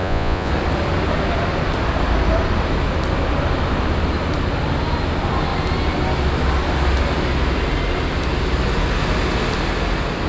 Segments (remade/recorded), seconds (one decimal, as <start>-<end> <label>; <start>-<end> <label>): 0.0-0.5 remade; 0.5-10.3 recorded